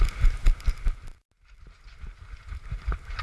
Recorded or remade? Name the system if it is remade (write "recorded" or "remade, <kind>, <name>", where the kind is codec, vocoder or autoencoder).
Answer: recorded